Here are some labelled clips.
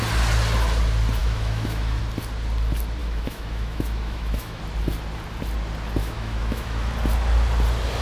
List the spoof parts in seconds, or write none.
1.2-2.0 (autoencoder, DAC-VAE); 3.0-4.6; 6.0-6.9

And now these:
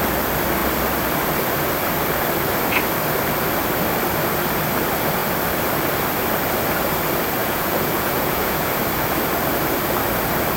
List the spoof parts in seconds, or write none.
7.4-8.7 (vocoder, Vocos)

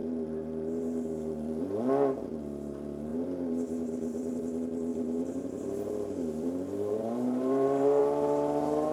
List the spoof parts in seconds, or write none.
0.0-1.8 (vocoder, BigVGAN v2); 3.1-4.4; 4.9-8.0